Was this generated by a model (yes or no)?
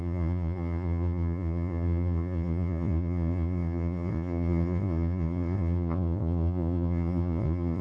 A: yes